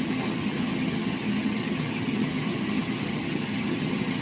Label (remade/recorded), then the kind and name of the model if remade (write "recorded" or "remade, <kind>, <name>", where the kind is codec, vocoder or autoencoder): remade, vocoder, HiFi-GAN